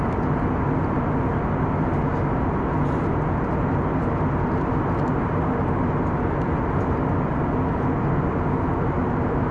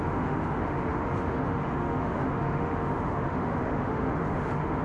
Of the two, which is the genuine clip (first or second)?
first